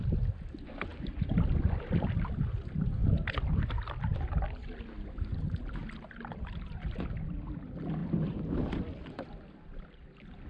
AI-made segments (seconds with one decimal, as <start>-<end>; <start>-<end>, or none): 0.9-3.5; 8.0-9.3